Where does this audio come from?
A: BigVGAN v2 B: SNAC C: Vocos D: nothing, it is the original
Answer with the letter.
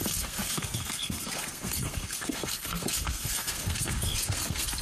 B